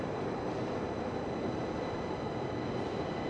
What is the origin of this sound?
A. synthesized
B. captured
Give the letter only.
B